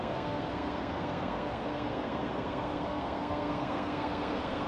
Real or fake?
fake